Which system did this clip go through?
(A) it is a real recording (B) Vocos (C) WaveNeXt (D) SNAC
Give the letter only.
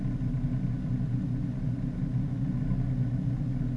A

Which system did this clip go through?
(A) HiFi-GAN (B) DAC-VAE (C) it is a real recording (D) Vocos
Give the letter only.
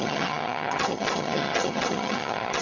A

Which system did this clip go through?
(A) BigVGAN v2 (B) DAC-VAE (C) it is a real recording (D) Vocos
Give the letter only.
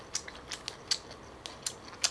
C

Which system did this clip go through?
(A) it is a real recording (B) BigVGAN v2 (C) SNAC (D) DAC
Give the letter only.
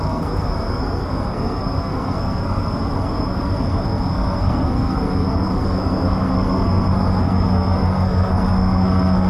C